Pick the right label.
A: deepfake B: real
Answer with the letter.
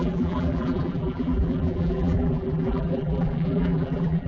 A